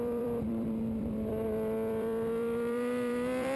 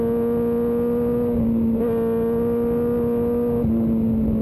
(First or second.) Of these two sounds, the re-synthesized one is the first